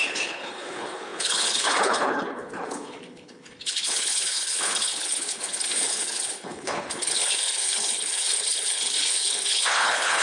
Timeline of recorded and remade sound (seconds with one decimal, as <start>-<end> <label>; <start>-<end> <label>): 0.0-10.2 remade